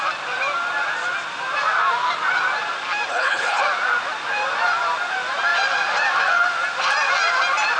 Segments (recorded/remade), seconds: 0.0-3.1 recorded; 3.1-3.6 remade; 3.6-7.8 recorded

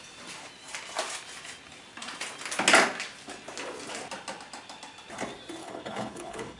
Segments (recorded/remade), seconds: 0.0-5.6 recorded; 5.6-6.6 remade

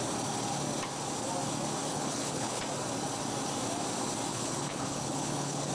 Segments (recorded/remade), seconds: 0.0-1.9 recorded; 1.9-2.6 remade; 2.6-4.3 recorded; 4.3-5.7 remade